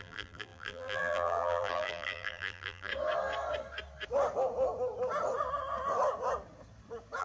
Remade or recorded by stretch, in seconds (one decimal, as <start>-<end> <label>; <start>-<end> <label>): 0.0-2.9 remade; 2.9-7.2 recorded